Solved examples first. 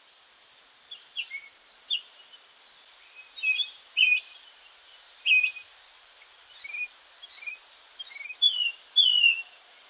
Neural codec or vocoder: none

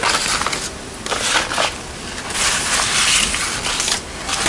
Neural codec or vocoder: none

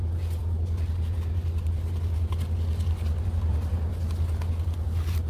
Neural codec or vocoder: none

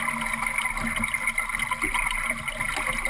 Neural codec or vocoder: none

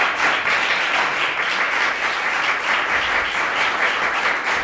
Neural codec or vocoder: none